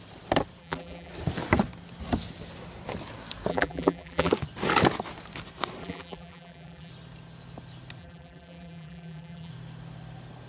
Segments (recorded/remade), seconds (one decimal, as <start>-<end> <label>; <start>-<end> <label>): 0.0-0.6 recorded; 0.6-1.1 remade; 1.1-3.5 recorded; 3.5-4.3 remade; 4.3-5.8 recorded; 5.8-6.9 remade; 6.9-8.0 recorded; 8.0-9.5 remade; 9.5-10.5 recorded